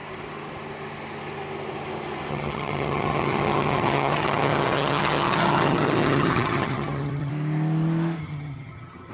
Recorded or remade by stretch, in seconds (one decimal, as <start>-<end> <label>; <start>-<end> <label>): 0.0-2.3 recorded; 2.3-7.3 remade; 7.3-8.2 recorded; 8.2-9.1 remade